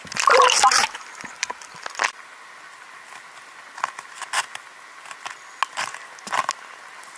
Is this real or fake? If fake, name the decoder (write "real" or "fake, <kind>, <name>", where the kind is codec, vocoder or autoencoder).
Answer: real